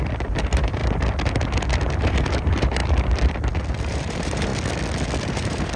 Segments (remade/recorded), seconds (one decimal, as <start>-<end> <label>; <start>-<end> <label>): 0.0-0.8 remade; 0.8-2.0 recorded; 2.0-2.8 remade; 2.8-3.7 recorded; 3.7-4.5 remade; 4.5-5.2 recorded; 5.2-5.8 remade